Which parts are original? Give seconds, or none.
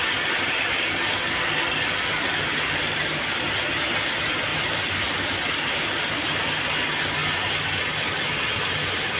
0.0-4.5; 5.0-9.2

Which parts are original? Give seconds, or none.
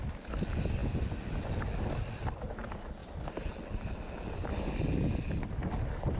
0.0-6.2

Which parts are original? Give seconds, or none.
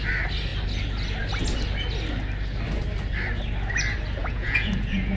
0.0-4.2